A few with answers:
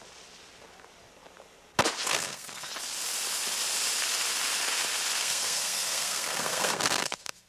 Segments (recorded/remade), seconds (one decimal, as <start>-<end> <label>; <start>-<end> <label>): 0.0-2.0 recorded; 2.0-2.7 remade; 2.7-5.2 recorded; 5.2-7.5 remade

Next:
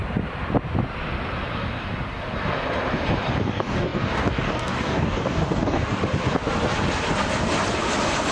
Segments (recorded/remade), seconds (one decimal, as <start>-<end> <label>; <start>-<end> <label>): 0.0-3.4 recorded; 3.4-6.0 remade; 6.0-8.3 recorded

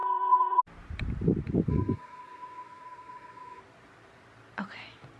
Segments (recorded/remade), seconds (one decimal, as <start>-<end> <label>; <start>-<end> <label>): 0.0-0.6 remade; 0.6-1.7 recorded; 1.7-3.6 remade; 3.6-5.2 recorded

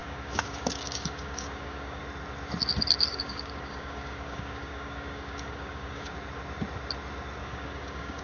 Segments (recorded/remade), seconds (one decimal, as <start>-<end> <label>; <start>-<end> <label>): 0.0-2.0 remade; 2.0-3.1 recorded; 3.1-6.1 remade; 6.1-7.4 recorded; 7.4-8.2 remade

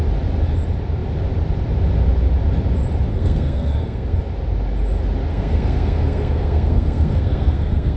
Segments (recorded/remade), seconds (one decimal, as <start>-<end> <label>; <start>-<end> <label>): 0.0-3.1 recorded; 3.1-4.2 remade; 4.2-5.3 recorded; 5.3-8.0 remade